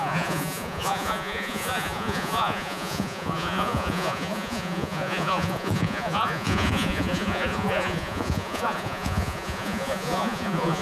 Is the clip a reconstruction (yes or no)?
yes